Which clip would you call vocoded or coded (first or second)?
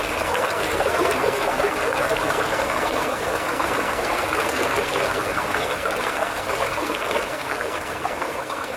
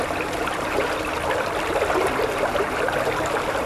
first